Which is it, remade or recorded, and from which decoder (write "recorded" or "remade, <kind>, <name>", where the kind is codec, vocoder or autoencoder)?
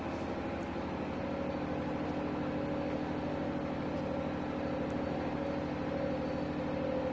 recorded